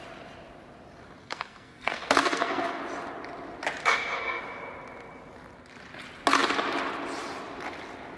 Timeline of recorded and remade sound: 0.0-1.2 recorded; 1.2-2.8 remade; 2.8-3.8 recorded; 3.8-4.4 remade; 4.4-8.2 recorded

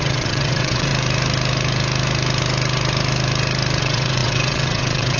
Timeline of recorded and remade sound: 0.0-0.9 remade; 0.9-3.8 recorded; 3.8-5.2 remade

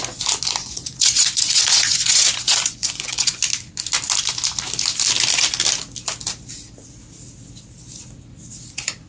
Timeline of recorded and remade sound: 0.0-0.6 recorded; 0.6-3.4 remade; 3.4-9.1 recorded

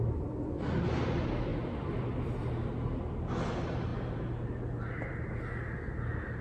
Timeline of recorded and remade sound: 0.0-1.5 recorded; 1.5-2.5 remade; 2.5-6.4 recorded